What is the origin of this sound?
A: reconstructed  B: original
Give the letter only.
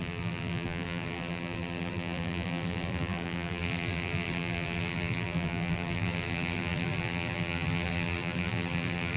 A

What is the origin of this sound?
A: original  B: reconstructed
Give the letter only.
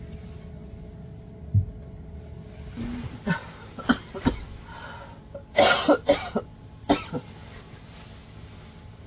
A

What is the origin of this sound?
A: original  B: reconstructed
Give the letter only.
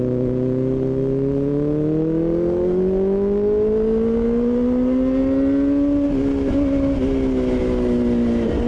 A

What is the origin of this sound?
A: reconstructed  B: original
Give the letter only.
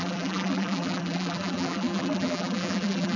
A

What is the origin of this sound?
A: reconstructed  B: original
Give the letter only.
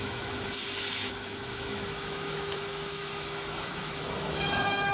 A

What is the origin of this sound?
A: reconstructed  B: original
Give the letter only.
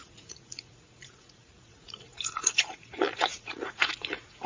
A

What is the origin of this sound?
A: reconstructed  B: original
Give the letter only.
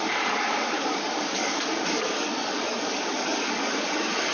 A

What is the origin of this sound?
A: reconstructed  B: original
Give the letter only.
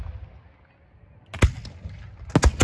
B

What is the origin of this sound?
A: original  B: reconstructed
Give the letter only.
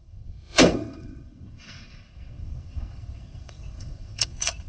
B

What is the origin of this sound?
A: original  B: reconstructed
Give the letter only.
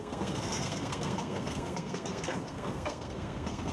B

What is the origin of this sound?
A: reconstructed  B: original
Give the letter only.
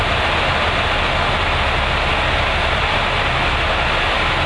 B